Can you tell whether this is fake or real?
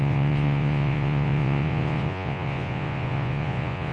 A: fake